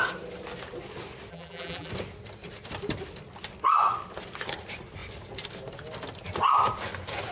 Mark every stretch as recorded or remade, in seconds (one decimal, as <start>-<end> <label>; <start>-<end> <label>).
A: 0.0-1.3 recorded; 1.3-1.9 remade; 1.9-7.3 recorded